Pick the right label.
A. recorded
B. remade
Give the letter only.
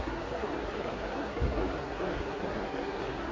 B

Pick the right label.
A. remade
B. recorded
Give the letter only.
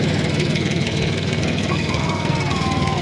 A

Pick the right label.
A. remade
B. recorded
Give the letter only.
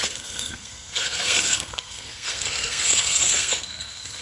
A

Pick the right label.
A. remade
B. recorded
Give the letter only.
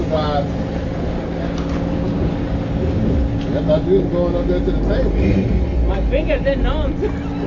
B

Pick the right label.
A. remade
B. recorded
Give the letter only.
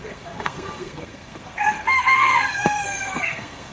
A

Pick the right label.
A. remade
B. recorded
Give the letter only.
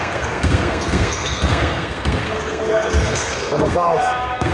A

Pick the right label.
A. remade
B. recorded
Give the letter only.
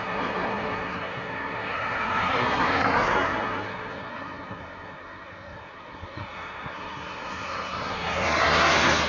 A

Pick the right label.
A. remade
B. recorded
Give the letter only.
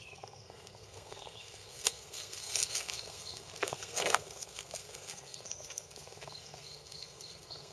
A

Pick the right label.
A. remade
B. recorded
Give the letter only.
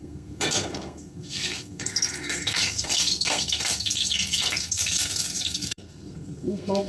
A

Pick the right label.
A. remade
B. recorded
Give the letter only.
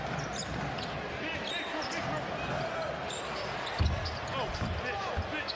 B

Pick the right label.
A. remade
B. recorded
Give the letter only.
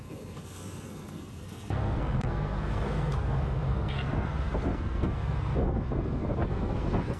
A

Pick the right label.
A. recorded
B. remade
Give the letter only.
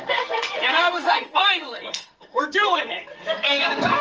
B